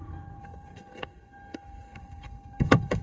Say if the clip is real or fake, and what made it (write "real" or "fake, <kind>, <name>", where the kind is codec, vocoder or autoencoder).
fake, codec, SNAC